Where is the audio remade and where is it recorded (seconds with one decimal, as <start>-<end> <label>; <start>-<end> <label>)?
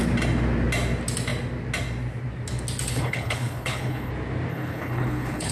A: 0.0-2.9 recorded; 2.9-4.1 remade; 4.1-4.5 recorded; 4.5-5.5 remade